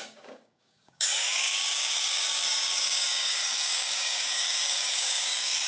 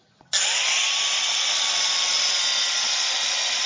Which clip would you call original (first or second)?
second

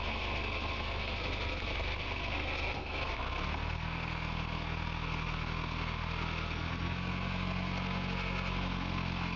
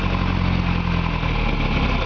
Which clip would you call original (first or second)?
second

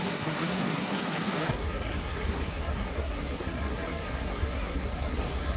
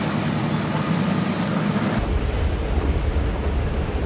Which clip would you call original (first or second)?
second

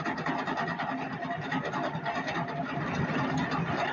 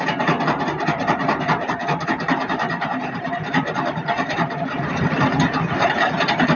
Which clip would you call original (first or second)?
first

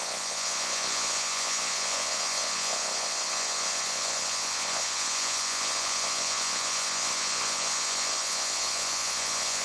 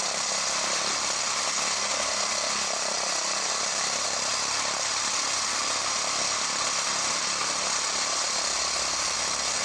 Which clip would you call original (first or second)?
second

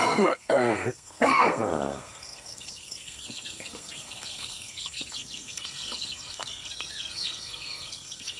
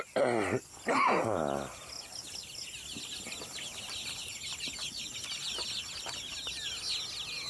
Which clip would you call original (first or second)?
second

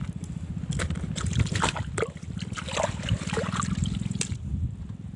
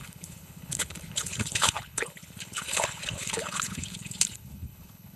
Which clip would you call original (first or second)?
first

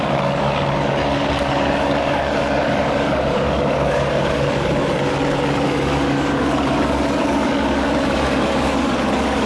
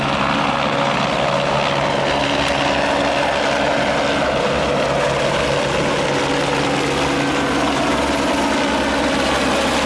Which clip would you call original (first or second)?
second